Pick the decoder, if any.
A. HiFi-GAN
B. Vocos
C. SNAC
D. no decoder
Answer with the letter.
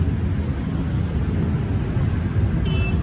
D